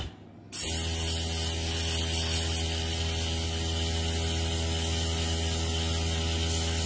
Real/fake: real